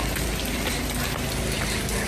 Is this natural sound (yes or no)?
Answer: yes